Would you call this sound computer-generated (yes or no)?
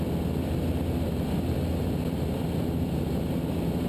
no